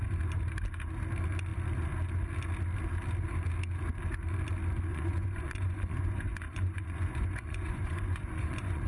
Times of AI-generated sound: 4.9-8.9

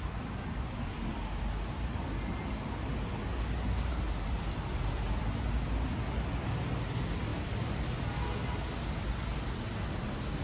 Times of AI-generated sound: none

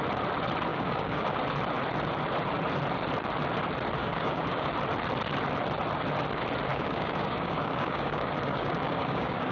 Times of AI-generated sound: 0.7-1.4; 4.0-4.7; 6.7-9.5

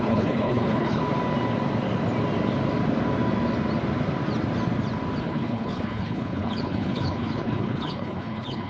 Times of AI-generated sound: 0.0-1.0; 5.2-8.7